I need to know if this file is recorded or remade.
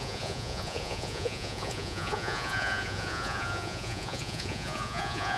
remade